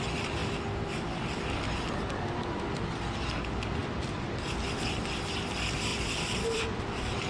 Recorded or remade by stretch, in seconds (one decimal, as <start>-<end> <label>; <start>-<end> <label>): 0.0-3.8 recorded; 3.8-5.0 remade; 5.0-5.9 recorded; 5.9-6.8 remade; 6.8-7.3 recorded